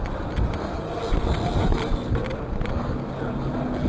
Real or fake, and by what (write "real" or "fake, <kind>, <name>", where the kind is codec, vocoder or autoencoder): real